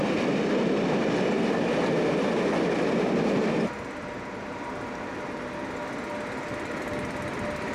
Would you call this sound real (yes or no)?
yes